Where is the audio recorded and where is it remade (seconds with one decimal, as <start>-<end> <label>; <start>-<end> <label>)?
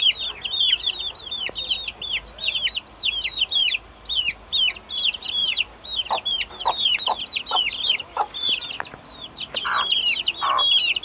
0.0-11.0 recorded